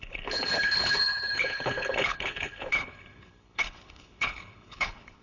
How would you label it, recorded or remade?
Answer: remade